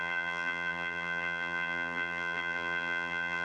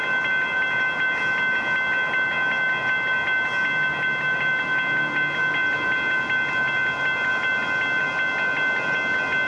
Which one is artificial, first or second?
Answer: first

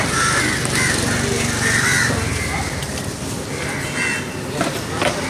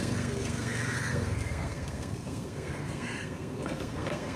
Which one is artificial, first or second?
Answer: second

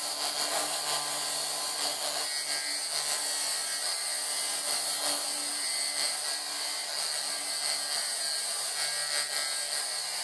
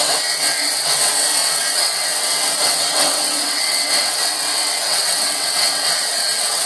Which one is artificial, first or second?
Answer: second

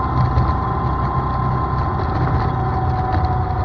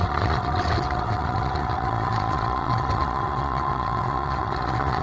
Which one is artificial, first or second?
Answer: second